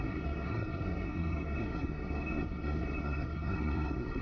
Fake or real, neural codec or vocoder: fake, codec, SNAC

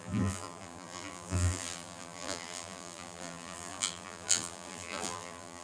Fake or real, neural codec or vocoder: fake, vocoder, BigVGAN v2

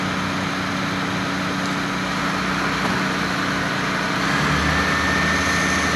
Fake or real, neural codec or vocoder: real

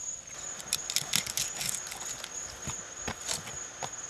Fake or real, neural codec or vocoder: real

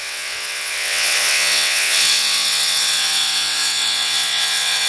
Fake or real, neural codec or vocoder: fake, vocoder, WaveNeXt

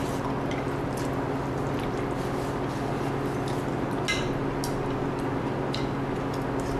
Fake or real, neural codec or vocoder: real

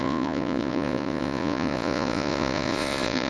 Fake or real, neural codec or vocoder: fake, vocoder, Vocos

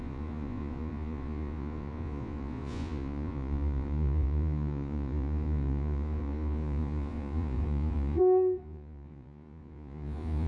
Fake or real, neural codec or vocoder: fake, vocoder, Vocos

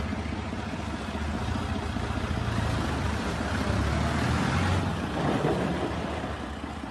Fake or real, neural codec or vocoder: real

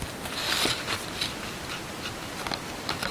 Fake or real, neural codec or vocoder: real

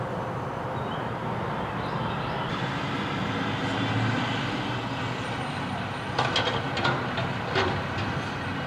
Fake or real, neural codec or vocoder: real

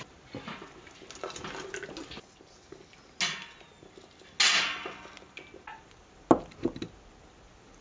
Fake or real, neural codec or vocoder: real